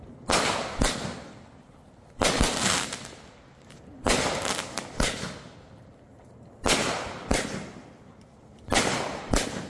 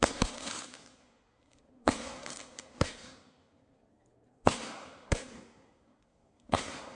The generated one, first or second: second